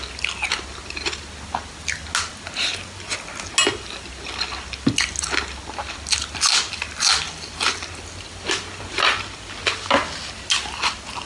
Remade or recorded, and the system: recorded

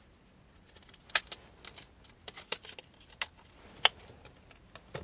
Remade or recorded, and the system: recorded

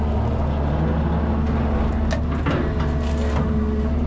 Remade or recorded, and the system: recorded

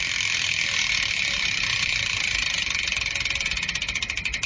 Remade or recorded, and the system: remade, vocoder, BigVGAN v2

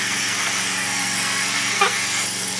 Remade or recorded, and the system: remade, codec, SNAC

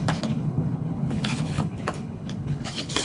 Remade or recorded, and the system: remade, codec, HILCodec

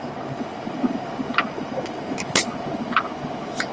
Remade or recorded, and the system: recorded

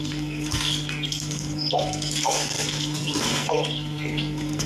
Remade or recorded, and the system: remade, codec, SNAC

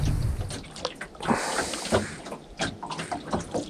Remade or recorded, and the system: recorded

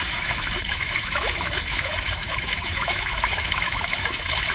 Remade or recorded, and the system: remade, autoencoder, DAC-VAE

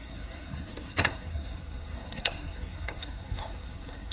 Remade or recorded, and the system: remade, codec, SNAC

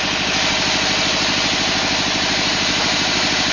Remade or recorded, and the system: recorded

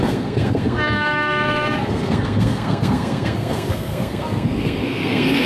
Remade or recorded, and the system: remade, codec, SNAC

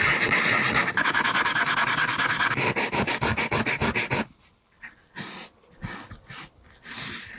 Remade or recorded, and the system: recorded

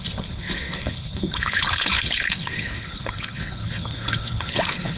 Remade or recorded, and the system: remade, codec, HILCodec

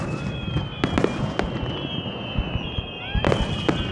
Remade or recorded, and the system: recorded